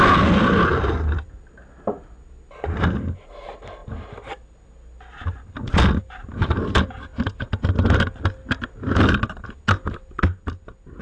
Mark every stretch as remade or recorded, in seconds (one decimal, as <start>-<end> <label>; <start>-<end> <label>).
0.0-11.0 recorded